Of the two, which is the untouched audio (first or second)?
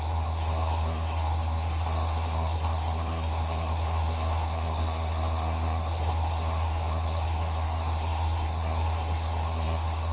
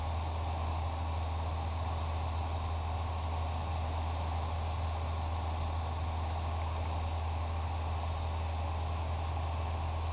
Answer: second